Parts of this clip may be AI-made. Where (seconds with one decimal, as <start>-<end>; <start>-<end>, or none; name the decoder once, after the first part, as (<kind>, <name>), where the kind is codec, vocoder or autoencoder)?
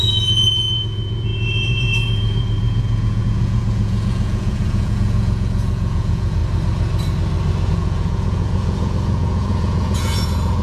0.0-6.4 (vocoder, Vocos); 7.7-10.6